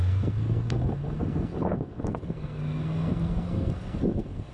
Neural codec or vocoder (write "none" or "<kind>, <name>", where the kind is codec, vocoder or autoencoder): codec, SNAC